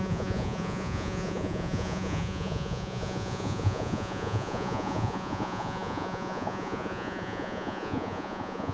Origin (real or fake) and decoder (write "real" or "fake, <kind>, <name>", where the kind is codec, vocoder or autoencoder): fake, vocoder, Vocos